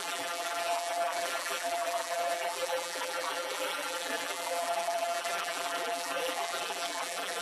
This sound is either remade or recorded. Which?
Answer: remade